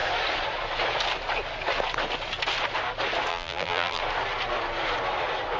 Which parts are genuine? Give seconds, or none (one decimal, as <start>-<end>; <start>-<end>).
0.0-3.3; 4.0-5.6